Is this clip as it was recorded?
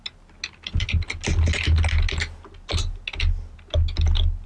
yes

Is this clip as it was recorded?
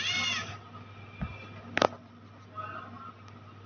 yes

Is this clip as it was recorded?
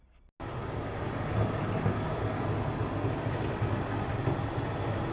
yes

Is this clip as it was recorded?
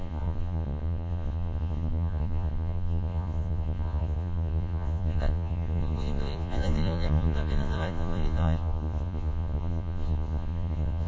no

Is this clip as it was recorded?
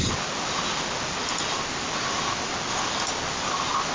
yes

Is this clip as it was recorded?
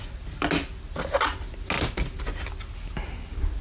yes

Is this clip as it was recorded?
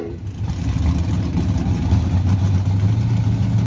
no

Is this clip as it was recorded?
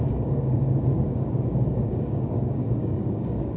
no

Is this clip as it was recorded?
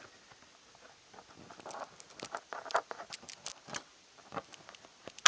yes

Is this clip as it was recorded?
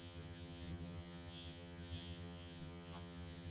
no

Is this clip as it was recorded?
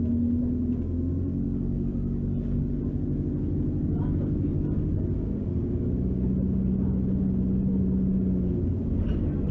yes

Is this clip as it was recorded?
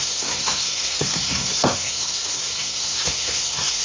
no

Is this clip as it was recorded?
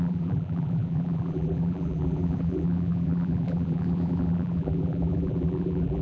no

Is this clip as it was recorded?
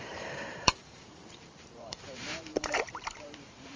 no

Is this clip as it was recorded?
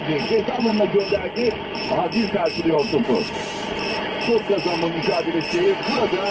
no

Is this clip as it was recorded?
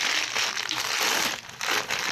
yes